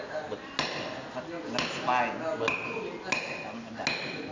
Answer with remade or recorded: recorded